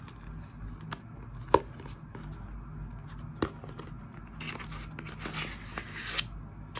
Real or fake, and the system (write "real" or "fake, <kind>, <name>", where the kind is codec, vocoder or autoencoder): real